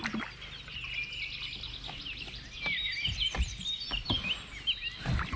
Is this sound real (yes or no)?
yes